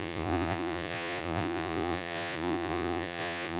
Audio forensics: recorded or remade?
remade